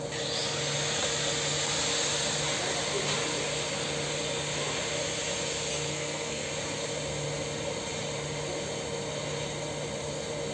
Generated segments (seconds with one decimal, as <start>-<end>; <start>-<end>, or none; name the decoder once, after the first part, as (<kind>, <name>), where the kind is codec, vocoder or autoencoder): 5.7-6.5 (codec, SNAC)